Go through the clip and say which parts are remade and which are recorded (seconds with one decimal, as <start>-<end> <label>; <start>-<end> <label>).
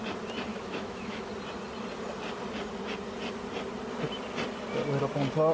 0.0-0.5 recorded; 0.5-1.3 remade; 1.3-5.5 recorded